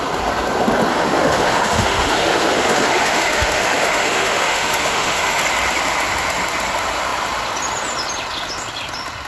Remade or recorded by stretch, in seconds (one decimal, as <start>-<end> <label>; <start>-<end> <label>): 0.0-0.9 recorded; 0.9-5.4 remade; 5.4-9.3 recorded